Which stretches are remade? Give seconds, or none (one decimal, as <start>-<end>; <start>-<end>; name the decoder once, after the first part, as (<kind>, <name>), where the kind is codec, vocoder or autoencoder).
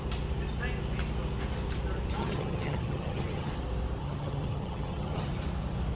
2.2-3.5 (vocoder, HiFi-GAN); 4.0-5.3